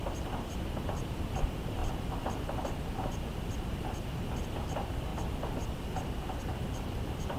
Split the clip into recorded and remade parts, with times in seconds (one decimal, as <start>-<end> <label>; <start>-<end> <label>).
0.0-5.1 remade; 5.1-6.4 recorded; 6.4-7.4 remade